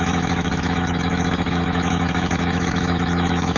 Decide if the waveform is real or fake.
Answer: fake